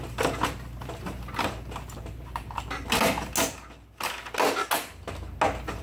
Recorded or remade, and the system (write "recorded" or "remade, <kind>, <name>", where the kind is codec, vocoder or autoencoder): recorded